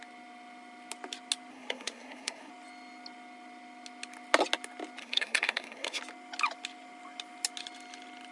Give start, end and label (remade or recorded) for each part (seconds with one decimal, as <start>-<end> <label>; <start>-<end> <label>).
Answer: 0.0-1.5 recorded; 1.5-2.5 remade; 2.5-5.0 recorded; 5.0-6.0 remade; 6.0-8.3 recorded